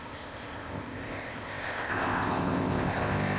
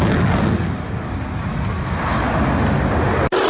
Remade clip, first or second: first